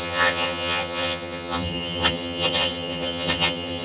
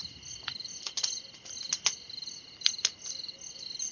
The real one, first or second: second